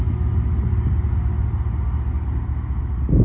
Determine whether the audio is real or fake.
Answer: real